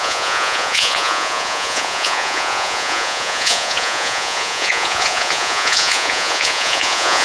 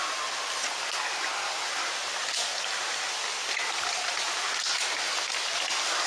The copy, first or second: first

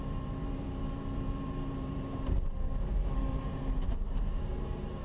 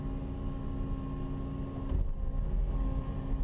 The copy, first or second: first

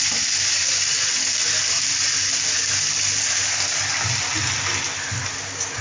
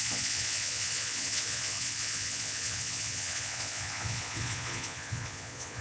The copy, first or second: second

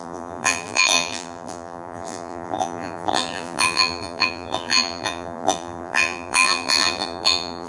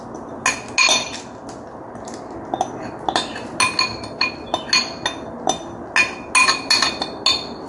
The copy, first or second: first